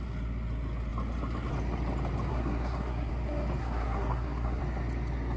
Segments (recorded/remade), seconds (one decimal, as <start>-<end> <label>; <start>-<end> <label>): 0.0-2.3 recorded; 2.3-3.1 remade; 3.1-3.6 recorded; 3.6-4.6 remade; 4.6-5.4 recorded